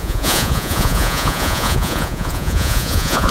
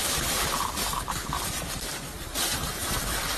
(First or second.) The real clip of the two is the second